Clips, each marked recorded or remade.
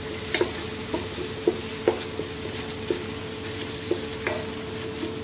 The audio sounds recorded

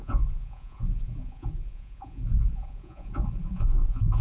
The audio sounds remade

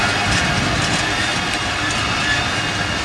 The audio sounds recorded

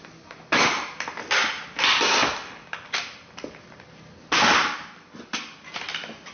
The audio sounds recorded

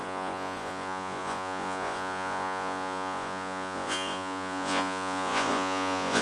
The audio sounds remade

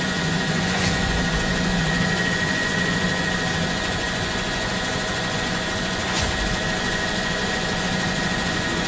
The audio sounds remade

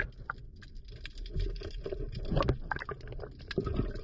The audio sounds recorded